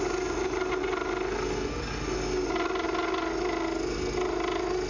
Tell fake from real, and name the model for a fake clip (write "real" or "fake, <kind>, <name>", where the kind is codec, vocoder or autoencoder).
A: real